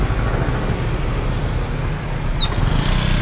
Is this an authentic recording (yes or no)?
yes